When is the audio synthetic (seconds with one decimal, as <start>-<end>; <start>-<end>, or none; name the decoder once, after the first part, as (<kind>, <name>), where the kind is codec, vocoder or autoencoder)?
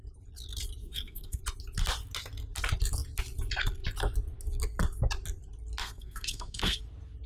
0.8-1.4 (codec, SNAC); 5.8-6.8